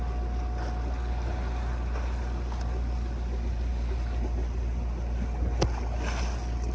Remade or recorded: recorded